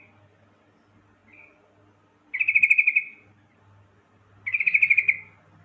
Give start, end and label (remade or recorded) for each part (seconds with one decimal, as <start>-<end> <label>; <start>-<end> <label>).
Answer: 0.0-5.6 recorded